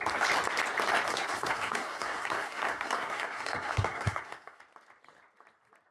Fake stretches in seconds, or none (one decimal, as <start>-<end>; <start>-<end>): 1.1-4.6